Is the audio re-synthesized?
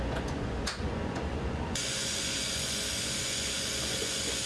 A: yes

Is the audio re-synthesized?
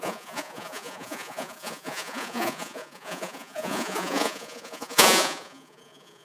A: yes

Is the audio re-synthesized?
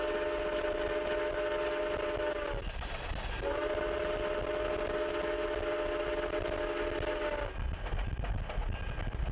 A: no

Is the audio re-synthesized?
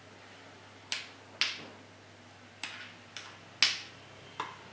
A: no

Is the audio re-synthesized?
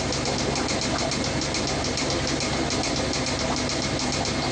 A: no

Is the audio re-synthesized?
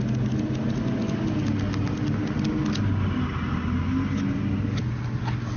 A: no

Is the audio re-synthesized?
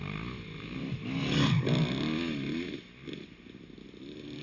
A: no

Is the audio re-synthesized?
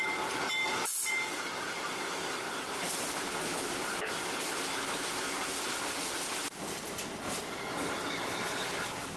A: no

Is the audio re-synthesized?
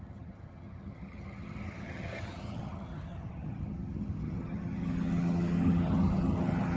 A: yes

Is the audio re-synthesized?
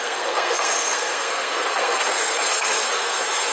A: yes